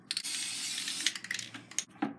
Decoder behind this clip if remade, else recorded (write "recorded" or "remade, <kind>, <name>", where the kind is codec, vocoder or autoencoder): recorded